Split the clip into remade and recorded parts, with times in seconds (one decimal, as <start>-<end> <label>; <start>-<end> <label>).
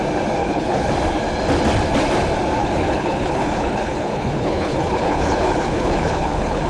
0.0-0.4 recorded; 0.4-0.9 remade; 0.9-2.6 recorded; 2.6-6.7 remade